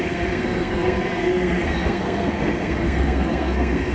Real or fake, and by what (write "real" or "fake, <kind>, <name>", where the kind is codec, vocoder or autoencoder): fake, codec, SNAC